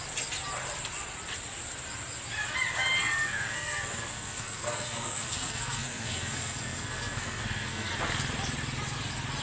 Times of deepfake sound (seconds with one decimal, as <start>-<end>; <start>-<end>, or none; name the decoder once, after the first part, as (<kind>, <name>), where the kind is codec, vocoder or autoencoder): 3.0-7.9 (codec, SNAC)